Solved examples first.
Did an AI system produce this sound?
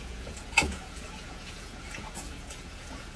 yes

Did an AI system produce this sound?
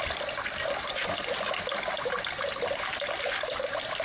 no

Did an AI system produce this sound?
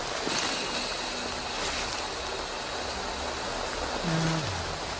no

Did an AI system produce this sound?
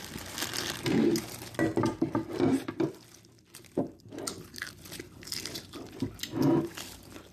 no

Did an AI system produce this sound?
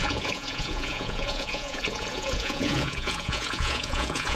yes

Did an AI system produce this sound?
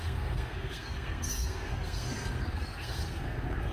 yes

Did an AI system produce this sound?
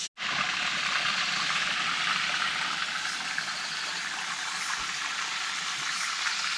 no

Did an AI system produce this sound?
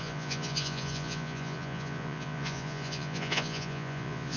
yes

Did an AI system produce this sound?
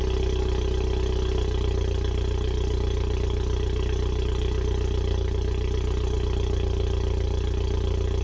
no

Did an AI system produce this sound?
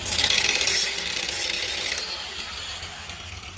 no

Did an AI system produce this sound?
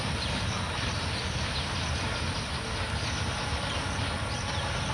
no